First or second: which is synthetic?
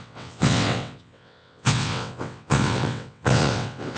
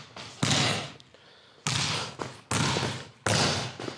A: first